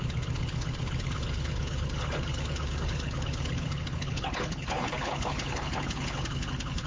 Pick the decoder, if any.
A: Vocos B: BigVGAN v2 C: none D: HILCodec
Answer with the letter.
D